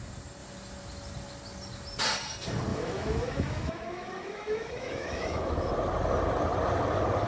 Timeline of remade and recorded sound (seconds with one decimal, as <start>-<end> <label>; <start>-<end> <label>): 0.0-2.7 recorded; 2.7-5.7 remade; 5.7-7.3 recorded